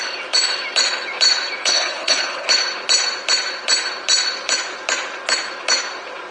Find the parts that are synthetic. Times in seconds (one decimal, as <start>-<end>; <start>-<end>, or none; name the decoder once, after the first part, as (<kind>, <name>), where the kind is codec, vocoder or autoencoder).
1.6-2.5 (codec, HILCodec)